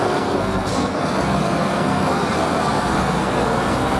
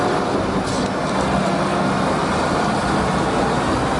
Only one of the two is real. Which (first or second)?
second